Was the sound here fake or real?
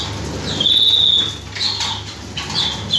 real